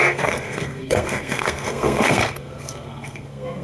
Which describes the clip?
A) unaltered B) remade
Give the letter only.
B